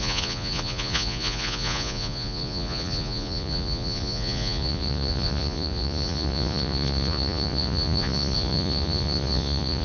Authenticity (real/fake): fake